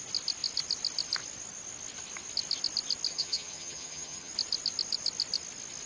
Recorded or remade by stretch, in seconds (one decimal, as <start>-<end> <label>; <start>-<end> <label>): 0.0-3.1 recorded; 3.1-4.3 remade; 4.3-5.9 recorded